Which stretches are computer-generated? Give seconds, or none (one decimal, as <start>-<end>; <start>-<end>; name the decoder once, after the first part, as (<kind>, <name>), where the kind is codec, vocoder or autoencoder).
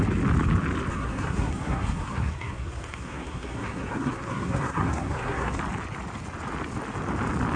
0.9-5.5 (codec, SNAC)